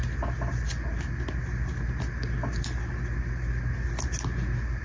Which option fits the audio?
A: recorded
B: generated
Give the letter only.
A